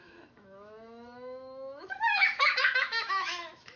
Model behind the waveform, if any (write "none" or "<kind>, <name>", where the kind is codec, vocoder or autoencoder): autoencoder, DAC-VAE